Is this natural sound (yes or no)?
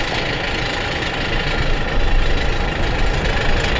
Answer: yes